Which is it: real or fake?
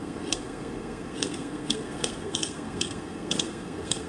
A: fake